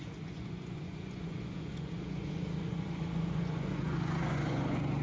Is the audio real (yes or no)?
no